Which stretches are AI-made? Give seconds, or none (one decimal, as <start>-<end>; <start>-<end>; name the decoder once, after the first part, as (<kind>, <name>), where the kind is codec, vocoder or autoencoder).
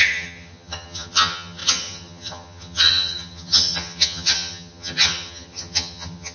0.0-6.3 (vocoder, HiFi-GAN)